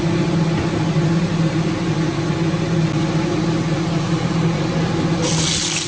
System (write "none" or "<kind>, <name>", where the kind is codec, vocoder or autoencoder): none